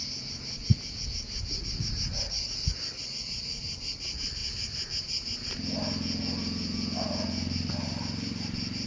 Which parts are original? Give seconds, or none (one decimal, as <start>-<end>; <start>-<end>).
0.0-8.9